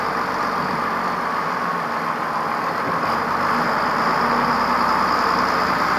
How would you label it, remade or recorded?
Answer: remade